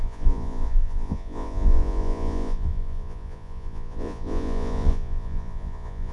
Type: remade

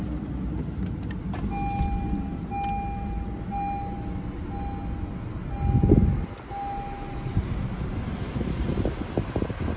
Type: recorded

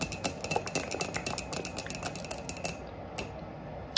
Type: recorded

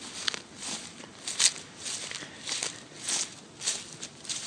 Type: recorded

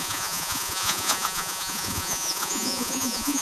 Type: remade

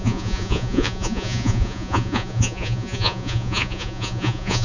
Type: remade